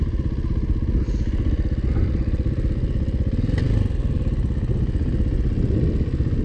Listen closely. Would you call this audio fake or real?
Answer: real